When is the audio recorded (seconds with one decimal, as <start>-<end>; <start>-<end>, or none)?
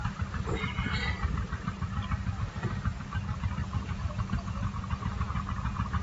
0.0-3.6; 4.8-6.0